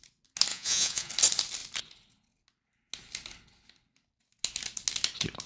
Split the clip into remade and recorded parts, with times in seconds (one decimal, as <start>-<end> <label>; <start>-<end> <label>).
0.0-0.5 recorded; 0.5-1.1 remade; 1.1-5.5 recorded